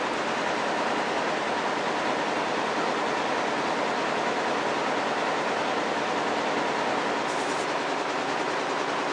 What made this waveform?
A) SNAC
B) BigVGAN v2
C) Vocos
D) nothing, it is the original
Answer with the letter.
D